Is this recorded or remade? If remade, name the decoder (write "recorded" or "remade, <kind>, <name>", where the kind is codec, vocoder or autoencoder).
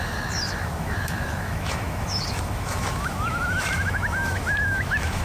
remade, autoencoder, DAC-VAE